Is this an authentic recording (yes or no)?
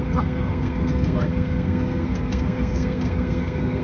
no